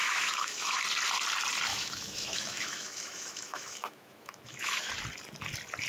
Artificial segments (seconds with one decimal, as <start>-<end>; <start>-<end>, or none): 0.0-0.8; 1.7-4.9